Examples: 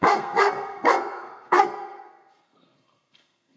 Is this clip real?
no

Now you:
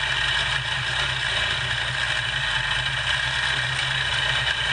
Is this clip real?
yes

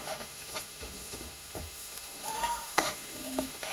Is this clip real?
no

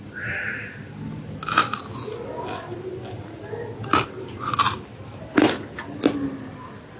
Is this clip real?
yes